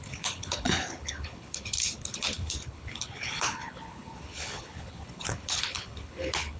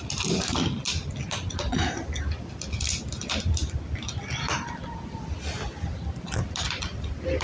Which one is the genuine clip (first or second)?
second